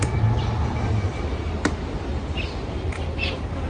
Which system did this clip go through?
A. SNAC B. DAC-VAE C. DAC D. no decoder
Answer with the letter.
D